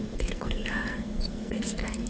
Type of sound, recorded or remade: remade